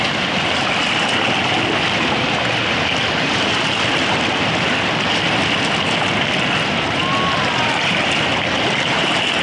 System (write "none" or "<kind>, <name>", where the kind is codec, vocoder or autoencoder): none